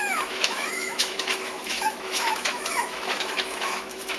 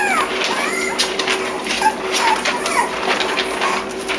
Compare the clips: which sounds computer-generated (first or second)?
first